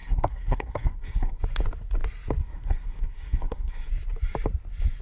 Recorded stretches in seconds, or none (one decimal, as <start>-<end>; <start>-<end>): 1.4-2.4; 3.9-5.0

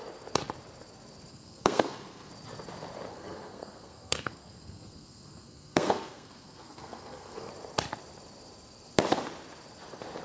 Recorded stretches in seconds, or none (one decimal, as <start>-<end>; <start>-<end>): 0.0-1.3; 2.3-3.1; 7.5-10.2

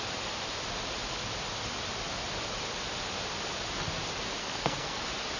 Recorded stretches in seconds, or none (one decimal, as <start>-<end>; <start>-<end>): 0.0-4.4; 5.0-5.4

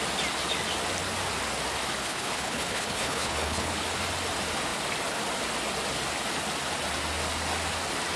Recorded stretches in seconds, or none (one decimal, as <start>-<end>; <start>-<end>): 0.0-2.0; 3.7-8.2

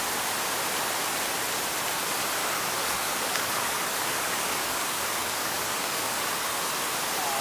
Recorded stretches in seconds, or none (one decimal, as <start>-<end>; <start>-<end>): 0.0-2.4; 6.2-7.4